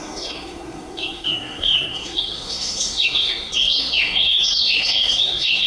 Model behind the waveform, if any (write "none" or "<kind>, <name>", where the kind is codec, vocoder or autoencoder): codec, SNAC